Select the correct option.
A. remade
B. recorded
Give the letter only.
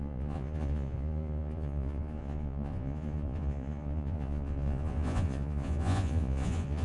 A